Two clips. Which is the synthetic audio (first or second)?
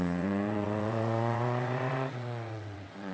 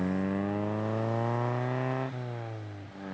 first